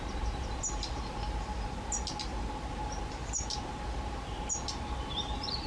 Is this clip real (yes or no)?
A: yes